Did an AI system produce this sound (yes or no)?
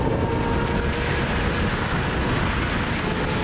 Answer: no